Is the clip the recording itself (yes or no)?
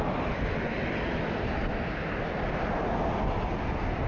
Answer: yes